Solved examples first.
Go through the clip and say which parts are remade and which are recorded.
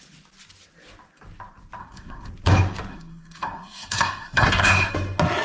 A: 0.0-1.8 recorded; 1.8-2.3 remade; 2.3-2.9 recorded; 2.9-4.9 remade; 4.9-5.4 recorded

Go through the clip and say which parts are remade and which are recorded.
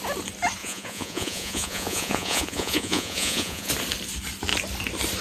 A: 0.0-0.6 recorded; 0.6-3.7 remade; 3.7-5.2 recorded